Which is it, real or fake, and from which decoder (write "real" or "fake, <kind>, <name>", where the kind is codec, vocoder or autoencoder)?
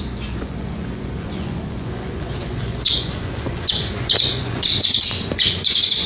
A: fake, vocoder, Vocos